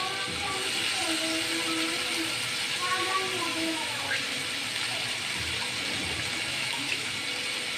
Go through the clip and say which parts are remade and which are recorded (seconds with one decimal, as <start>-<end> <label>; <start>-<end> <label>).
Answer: 0.0-3.5 recorded; 3.5-4.0 remade; 4.0-6.5 recorded; 6.5-7.1 remade; 7.1-7.8 recorded